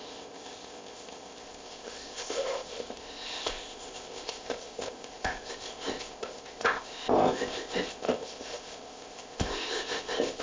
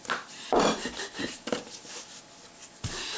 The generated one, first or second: first